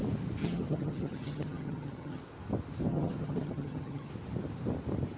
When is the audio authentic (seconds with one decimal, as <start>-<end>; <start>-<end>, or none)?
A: 0.0-0.4; 2.2-2.9; 4.1-5.2